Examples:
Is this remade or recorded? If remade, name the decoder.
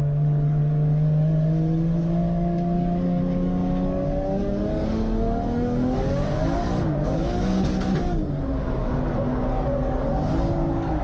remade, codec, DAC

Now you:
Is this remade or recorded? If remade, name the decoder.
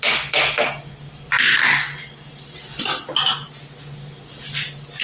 recorded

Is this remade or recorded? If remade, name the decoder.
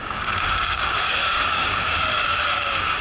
remade, codec, DAC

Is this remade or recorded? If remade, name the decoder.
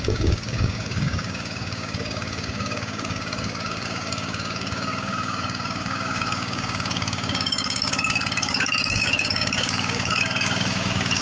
remade, codec, DAC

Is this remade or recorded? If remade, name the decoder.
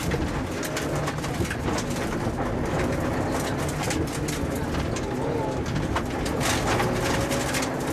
recorded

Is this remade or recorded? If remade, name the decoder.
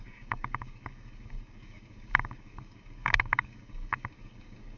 remade, codec, DAC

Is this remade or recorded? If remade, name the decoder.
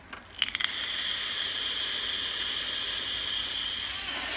recorded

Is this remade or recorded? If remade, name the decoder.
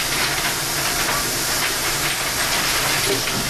recorded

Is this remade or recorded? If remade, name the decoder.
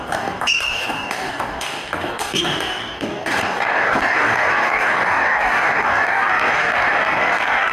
remade, codec, DAC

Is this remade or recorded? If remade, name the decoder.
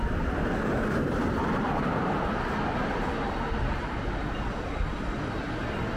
recorded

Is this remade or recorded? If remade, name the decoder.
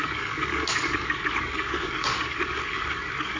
remade, codec, DAC